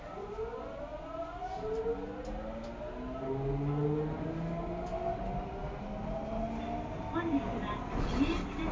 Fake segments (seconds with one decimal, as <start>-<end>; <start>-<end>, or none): none